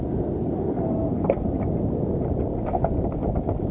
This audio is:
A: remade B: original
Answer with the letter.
B